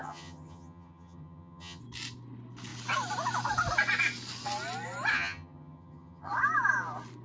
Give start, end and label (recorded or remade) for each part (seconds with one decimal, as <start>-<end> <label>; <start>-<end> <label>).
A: 0.0-1.8 remade; 1.8-5.1 recorded; 5.1-6.3 remade; 6.3-7.2 recorded